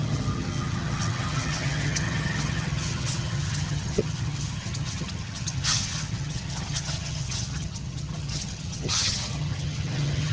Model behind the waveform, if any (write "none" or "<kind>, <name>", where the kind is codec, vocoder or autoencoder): vocoder, HiFi-GAN